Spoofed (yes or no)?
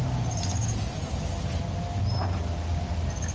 no